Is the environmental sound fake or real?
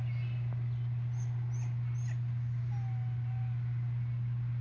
real